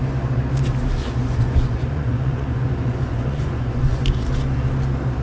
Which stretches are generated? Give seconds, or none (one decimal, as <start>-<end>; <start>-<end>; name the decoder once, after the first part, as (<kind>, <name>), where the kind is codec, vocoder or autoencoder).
1.2-4.0 (vocoder, Vocos)